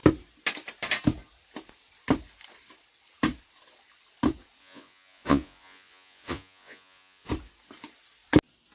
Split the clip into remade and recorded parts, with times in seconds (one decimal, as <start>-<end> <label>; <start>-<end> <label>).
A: 0.0-4.6 recorded; 4.6-7.3 remade; 7.3-8.7 recorded